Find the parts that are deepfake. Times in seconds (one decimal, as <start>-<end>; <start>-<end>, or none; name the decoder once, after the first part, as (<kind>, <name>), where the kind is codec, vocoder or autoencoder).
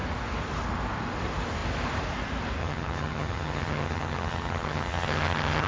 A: 2.6-5.7 (vocoder, HiFi-GAN)